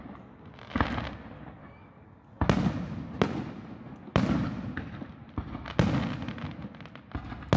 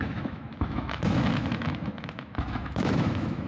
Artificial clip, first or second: second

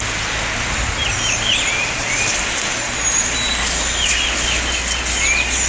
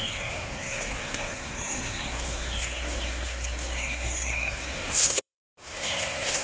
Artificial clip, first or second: second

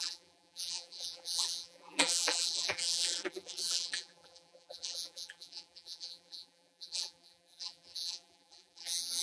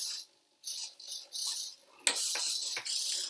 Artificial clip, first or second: first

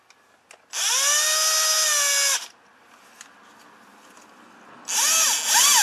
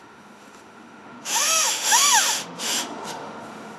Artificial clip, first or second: second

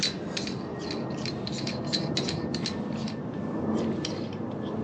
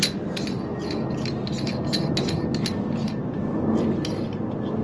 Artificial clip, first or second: first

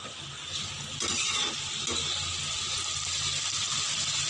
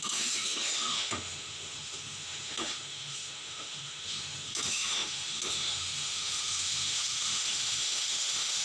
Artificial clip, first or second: second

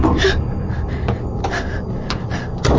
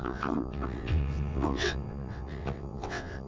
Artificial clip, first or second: second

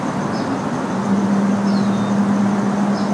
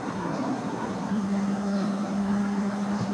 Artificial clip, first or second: second